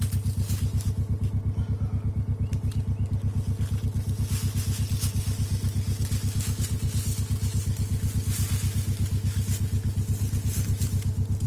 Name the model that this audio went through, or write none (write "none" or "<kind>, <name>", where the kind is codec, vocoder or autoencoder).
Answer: none